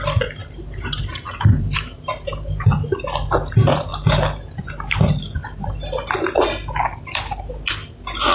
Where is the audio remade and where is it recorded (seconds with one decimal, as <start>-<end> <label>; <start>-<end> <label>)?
0.0-0.4 recorded; 0.4-2.7 remade; 2.7-8.3 recorded